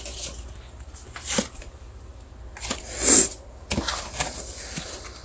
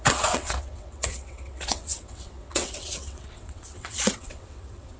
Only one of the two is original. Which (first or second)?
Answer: first